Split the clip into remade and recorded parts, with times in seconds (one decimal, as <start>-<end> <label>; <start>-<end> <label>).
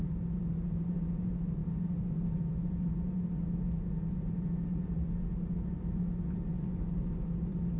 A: 0.0-7.8 remade